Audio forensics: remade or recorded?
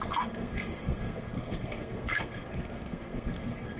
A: remade